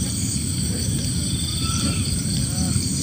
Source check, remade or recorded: remade